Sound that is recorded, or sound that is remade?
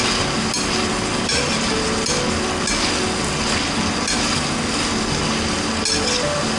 recorded